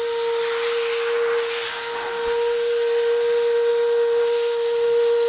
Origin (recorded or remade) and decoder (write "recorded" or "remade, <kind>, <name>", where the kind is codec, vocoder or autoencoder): recorded